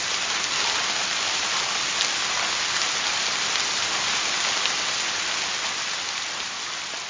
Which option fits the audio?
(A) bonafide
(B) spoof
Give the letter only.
A